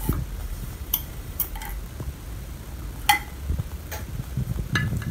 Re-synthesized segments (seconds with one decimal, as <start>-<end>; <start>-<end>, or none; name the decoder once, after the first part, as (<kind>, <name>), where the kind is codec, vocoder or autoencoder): 0.4-1.5 (vocoder, BigVGAN v2)